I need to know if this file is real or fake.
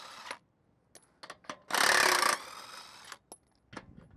real